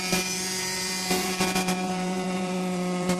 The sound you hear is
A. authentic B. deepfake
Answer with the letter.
B